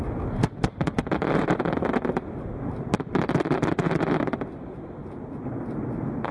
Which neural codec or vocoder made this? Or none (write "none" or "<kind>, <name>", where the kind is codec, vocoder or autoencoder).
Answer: none